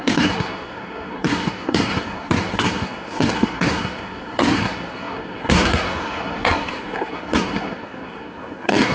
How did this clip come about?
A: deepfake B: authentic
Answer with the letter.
A